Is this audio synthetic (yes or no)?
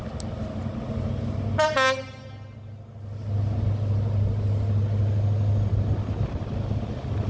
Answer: no